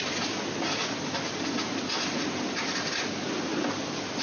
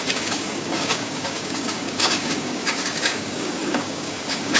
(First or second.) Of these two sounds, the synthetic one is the second